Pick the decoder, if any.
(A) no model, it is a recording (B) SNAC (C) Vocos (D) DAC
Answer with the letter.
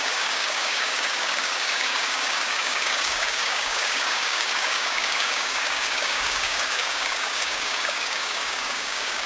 D